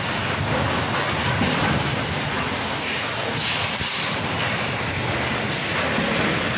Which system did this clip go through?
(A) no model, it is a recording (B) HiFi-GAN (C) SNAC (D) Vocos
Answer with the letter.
A